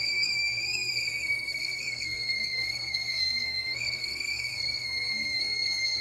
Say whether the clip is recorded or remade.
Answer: remade